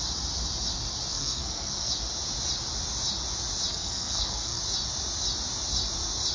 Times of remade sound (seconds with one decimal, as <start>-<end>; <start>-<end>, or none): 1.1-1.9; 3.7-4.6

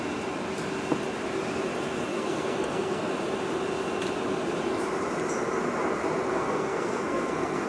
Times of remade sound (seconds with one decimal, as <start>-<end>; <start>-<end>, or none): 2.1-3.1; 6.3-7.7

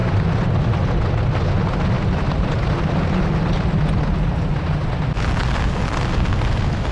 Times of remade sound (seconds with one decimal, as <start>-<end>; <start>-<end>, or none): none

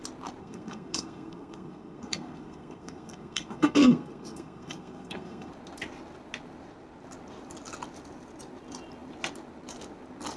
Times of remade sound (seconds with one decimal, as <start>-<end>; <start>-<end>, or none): 0.4-5.5

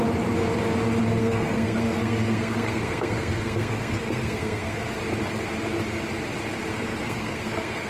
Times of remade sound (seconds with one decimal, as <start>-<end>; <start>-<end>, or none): 1.2-4.9; 6.7-7.9